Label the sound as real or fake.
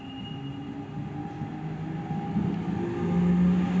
real